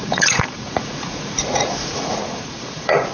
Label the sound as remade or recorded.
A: remade